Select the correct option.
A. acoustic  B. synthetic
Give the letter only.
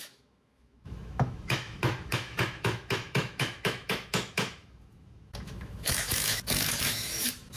B